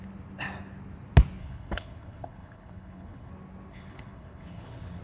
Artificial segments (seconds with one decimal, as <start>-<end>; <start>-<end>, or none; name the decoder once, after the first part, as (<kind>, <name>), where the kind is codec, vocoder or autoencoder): 1.4-3.3 (codec, HILCodec); 3.7-5.0